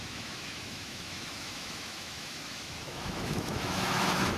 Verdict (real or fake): fake